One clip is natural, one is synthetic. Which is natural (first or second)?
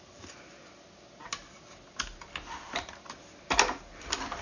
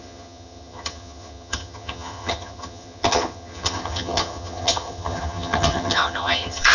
first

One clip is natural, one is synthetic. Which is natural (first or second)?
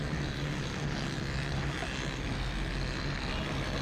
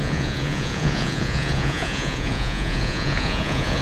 first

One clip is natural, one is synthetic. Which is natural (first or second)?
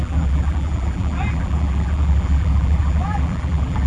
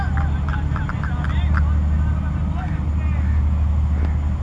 second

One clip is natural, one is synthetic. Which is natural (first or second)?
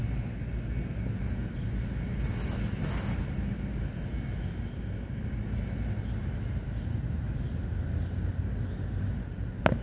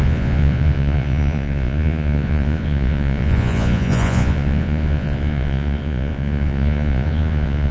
first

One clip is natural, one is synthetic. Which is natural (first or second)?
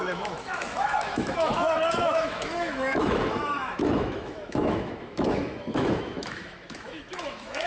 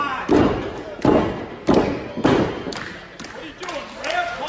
second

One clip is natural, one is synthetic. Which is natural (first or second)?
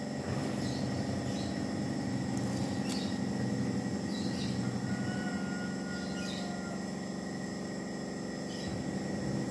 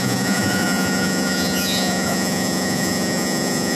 first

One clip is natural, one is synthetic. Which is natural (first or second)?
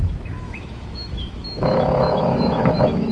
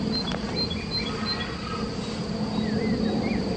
second